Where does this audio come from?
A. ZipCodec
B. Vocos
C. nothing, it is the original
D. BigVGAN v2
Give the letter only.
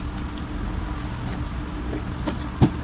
C